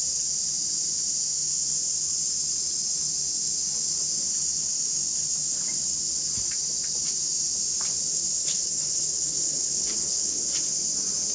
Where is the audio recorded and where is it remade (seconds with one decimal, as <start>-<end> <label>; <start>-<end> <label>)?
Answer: 0.0-8.4 recorded; 8.4-10.4 remade; 10.4-11.3 recorded